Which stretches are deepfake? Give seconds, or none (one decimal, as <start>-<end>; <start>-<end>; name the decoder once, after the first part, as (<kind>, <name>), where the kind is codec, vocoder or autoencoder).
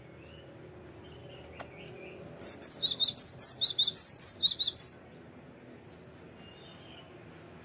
none